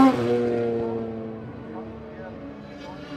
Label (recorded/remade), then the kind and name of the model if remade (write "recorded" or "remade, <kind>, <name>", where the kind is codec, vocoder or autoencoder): recorded